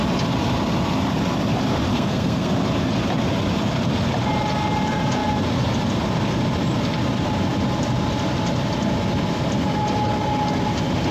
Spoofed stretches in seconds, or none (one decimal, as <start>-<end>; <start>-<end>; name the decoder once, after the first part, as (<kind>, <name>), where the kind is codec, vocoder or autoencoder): 1.9-2.5 (codec, SNAC)